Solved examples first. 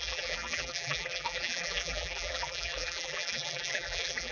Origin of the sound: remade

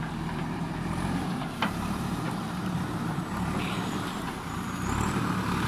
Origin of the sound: remade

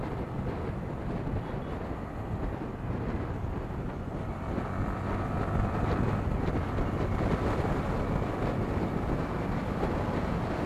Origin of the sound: recorded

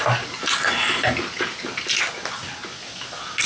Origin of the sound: recorded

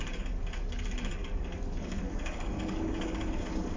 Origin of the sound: remade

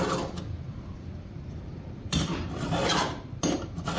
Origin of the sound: recorded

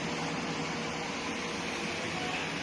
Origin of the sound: recorded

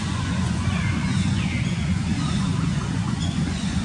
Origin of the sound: remade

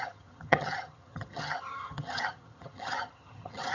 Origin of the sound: remade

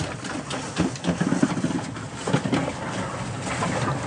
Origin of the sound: recorded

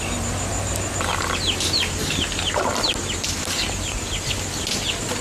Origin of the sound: recorded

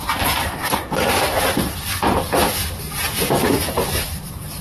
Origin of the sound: remade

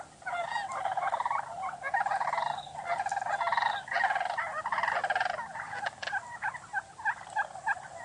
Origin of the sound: recorded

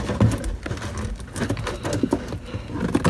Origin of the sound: recorded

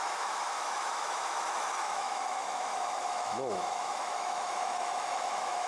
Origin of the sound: remade